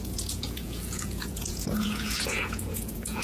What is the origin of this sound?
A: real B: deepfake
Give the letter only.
B